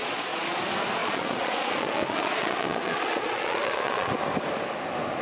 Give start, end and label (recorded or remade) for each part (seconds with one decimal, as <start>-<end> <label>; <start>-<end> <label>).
0.0-0.6 remade; 0.6-1.0 recorded; 1.0-4.1 remade; 4.1-5.2 recorded